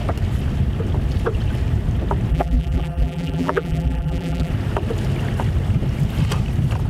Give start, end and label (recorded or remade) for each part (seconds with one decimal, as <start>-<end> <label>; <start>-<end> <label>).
0.0-2.3 recorded; 2.3-4.5 remade; 4.5-6.9 recorded